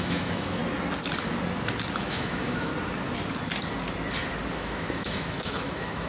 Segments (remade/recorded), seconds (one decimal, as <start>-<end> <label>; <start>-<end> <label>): 0.0-0.6 remade; 0.6-1.9 recorded; 1.9-2.7 remade; 2.7-4.5 recorded; 4.5-6.1 remade